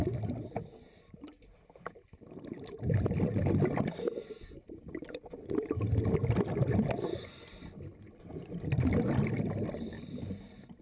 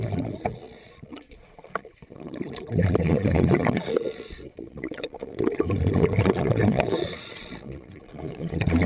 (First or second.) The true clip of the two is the first